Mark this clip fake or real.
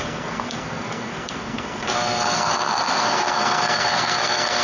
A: fake